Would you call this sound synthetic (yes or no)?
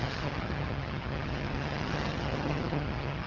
yes